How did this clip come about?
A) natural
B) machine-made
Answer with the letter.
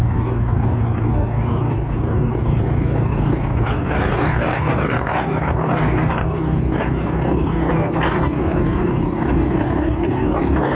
B